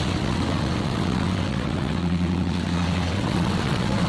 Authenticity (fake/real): fake